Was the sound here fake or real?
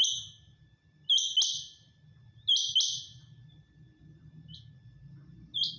real